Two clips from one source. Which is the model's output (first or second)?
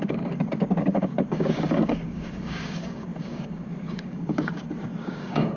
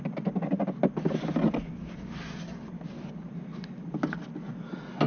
first